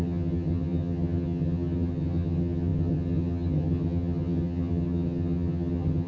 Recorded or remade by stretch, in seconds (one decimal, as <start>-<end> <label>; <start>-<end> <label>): 0.0-6.1 remade